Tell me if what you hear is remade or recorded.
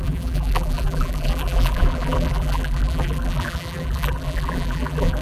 remade